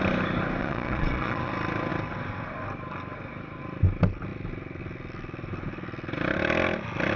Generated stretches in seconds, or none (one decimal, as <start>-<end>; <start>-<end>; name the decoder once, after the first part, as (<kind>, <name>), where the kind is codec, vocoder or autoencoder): 0.6-1.5 (vocoder, Vocos)